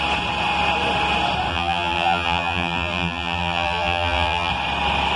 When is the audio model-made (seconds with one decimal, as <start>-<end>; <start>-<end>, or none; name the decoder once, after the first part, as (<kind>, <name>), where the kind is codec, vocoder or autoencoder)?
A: 1.5-4.5 (vocoder, BigVGAN v2)